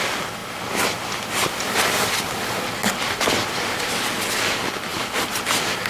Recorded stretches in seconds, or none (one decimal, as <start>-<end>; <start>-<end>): 0.0-5.9